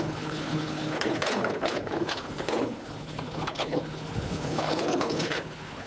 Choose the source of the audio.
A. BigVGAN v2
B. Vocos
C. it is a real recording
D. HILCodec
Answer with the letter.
D